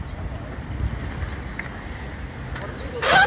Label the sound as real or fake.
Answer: real